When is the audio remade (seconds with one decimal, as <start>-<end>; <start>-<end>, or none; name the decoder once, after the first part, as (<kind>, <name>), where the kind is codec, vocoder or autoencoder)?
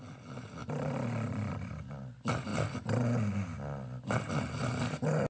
none